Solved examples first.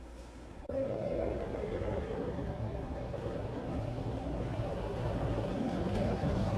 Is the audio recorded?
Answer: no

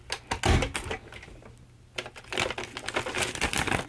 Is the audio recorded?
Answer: yes